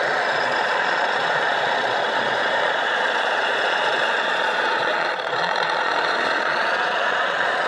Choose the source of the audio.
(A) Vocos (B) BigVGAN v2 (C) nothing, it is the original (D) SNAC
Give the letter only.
A